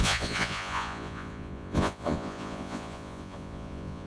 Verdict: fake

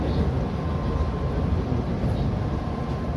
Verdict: real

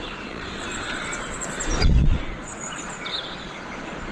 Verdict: fake